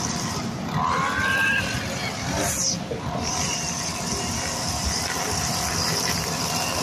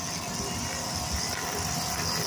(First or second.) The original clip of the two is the second